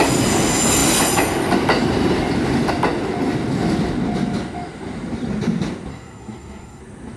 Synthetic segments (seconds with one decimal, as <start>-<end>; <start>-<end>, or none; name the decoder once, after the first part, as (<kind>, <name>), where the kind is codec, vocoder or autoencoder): 5.9-6.8 (codec, SNAC)

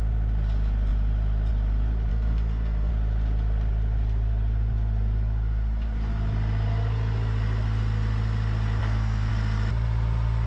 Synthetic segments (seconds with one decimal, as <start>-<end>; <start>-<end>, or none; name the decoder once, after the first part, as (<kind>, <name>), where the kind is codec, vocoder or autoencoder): 2.1-2.9 (codec, SNAC); 8.8-9.3

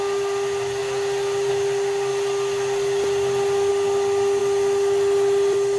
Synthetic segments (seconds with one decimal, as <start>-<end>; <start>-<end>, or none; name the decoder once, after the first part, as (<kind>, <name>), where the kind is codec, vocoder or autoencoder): none

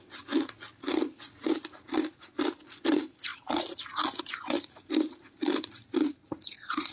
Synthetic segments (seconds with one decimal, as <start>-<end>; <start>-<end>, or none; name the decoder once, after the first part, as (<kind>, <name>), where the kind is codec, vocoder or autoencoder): none

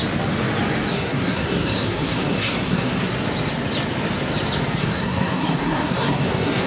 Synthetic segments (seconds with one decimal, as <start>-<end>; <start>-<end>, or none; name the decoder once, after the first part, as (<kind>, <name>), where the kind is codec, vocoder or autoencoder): 0.9-3.1 (codec, SNAC); 4.8-6.7

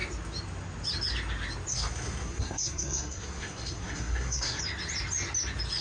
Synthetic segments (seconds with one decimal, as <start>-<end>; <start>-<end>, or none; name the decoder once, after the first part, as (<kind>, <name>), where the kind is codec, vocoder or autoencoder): 1.7-4.6 (codec, SNAC)

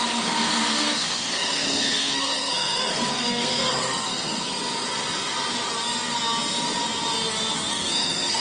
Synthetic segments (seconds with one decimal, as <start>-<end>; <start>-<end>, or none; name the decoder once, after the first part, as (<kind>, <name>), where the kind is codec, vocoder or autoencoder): 0.0-4.5 (codec, SNAC); 7.7-8.4